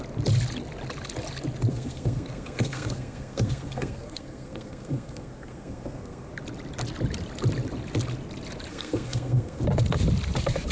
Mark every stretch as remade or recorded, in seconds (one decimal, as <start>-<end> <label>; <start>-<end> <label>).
0.0-1.7 recorded; 1.7-6.3 remade; 6.3-8.7 recorded; 8.7-9.6 remade; 9.6-10.7 recorded